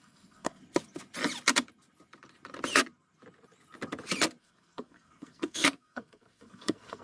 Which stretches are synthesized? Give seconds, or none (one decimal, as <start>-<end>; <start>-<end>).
0.0-0.6; 4.4-7.0